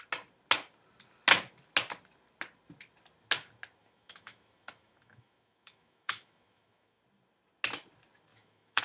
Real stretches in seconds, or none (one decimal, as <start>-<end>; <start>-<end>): 0.0-3.8; 7.0-8.3